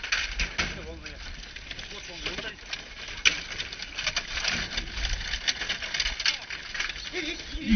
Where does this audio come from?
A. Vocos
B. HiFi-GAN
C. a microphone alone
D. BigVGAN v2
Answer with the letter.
C